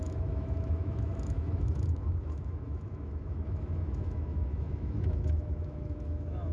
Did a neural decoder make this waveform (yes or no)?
yes